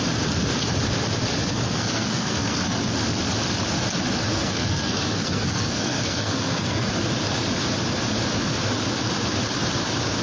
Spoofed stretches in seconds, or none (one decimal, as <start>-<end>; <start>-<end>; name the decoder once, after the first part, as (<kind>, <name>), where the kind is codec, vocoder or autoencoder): 1.4-2.8 (codec, SNAC); 4.3-6.9

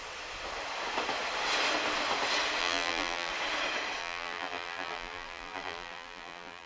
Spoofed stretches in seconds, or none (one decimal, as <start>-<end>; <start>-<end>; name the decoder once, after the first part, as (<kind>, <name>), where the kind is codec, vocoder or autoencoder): 2.6-3.3 (vocoder, BigVGAN v2); 4.0-6.7

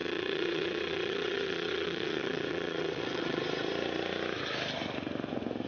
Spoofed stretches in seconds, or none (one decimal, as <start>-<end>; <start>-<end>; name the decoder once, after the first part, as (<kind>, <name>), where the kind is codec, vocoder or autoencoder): 0.0-3.4 (vocoder, WaveNeXt)

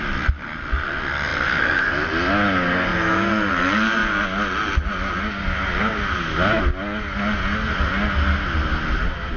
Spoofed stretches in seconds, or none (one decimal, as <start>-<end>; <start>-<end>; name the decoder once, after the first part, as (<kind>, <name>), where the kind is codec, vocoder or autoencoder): none